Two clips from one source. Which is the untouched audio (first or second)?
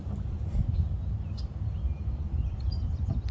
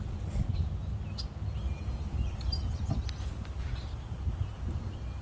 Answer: second